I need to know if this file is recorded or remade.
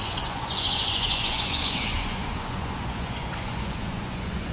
remade